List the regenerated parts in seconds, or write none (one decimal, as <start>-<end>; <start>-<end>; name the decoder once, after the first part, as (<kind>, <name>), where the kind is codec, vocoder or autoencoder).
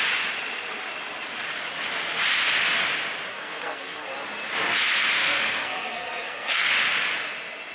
3.3-4.1 (codec, SNAC); 5.2-6.7